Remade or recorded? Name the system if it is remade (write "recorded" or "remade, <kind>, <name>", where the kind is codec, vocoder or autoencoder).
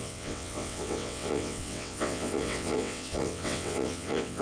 remade, vocoder, WaveNeXt